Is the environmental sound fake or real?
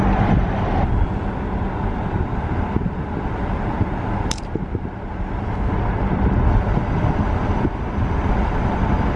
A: real